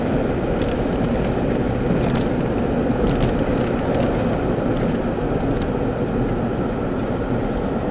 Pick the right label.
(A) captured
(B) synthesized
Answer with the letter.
A